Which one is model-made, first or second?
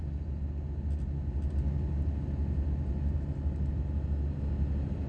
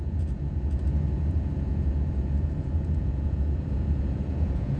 second